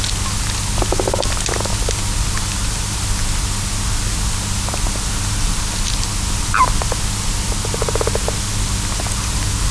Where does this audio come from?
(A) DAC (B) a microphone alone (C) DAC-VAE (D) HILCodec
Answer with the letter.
B